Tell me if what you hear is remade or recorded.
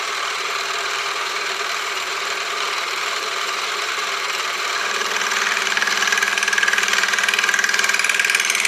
remade